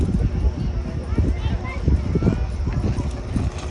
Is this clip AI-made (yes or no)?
no